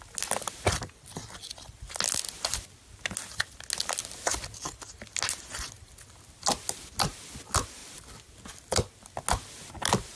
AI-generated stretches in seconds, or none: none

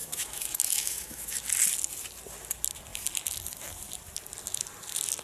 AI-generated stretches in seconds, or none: 0.0-1.4 (autoencoder, DAC-VAE)

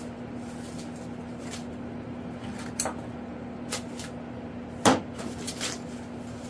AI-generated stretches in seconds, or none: none

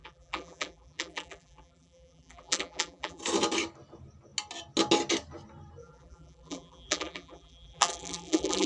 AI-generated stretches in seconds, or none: 0.0-3.2 (vocoder, BigVGAN v2); 5.8-8.7